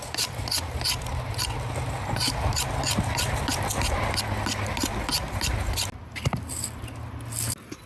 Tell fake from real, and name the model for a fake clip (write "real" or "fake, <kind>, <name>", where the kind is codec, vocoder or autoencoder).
real